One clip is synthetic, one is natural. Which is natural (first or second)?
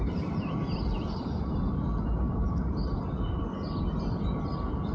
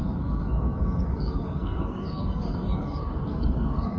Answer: first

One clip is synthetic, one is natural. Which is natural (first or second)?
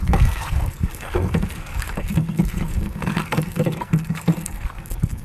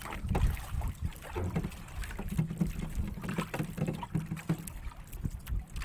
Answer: second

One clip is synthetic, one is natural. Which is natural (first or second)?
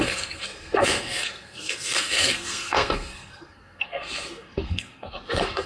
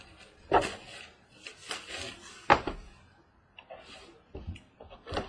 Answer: second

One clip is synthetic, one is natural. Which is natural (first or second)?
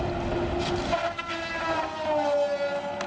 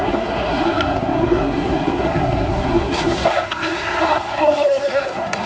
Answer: first